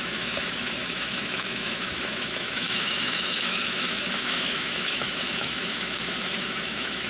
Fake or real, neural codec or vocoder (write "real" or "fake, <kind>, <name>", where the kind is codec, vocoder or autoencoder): fake, autoencoder, DAC-VAE